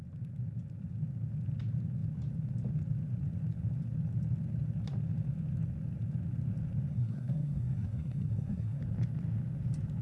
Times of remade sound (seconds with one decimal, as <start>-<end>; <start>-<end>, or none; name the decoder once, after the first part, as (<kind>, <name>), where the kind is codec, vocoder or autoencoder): 6.9-8.8 (codec, SNAC)